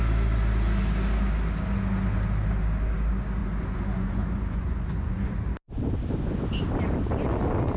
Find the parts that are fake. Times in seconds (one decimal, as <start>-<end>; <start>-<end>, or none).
3.4-5.4